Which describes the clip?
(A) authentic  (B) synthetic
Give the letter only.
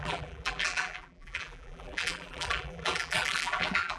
B